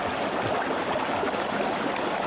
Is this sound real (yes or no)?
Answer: yes